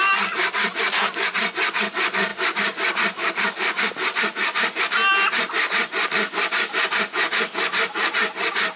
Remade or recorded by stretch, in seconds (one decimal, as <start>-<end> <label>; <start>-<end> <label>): 0.0-8.8 recorded